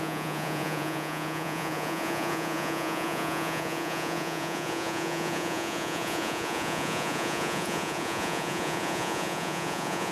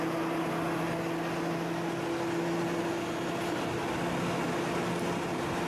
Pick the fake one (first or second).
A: first